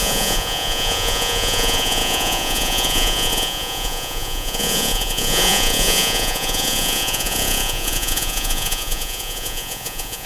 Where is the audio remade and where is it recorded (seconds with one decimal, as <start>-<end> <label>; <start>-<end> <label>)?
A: 0.0-10.3 remade